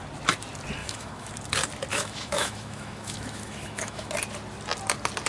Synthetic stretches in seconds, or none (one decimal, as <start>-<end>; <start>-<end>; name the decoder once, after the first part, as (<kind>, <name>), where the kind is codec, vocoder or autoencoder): 0.8-1.3 (autoencoder, DAC-VAE); 1.9-4.1